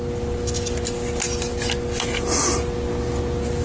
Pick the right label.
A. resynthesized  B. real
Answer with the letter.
B